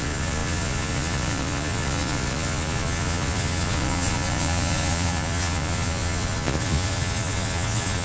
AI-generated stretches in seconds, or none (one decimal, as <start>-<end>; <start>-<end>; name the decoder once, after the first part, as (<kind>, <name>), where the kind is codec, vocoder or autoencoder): 0.0-8.0 (vocoder, Vocos)